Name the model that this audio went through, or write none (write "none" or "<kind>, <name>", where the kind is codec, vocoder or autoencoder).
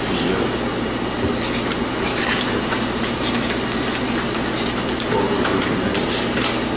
none